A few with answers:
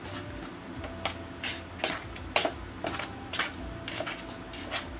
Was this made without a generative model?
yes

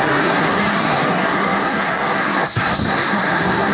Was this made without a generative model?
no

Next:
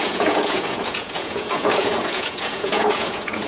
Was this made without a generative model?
no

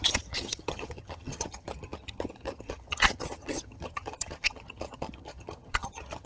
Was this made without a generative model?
no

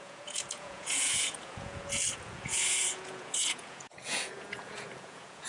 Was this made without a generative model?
no